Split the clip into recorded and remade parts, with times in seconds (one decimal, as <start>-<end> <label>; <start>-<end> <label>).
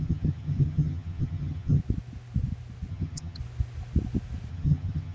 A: 0.0-1.8 remade; 1.8-2.9 recorded; 2.9-3.4 remade; 3.4-4.5 recorded; 4.5-5.1 remade